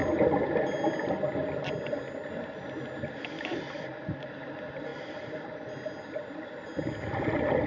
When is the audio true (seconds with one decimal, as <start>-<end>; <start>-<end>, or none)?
0.0-7.7